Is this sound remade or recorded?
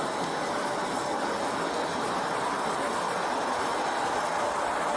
recorded